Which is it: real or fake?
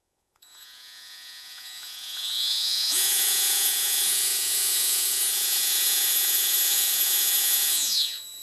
fake